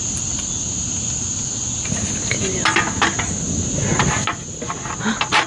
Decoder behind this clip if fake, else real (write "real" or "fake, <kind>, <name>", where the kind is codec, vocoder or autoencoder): real